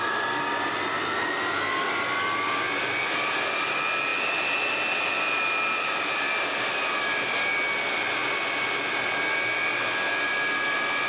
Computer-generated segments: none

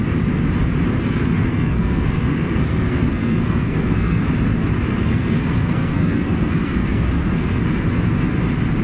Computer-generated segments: 1.0-4.2; 4.9-8.0

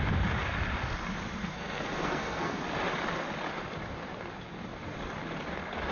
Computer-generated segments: 1.4-2.6

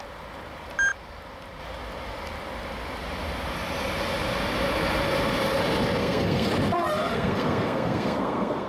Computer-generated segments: 6.0-6.5; 7.1-8.7